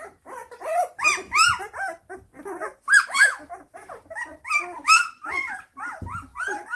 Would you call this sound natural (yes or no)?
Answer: yes